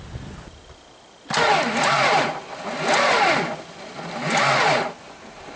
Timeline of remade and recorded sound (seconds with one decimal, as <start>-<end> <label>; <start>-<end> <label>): 0.0-5.6 recorded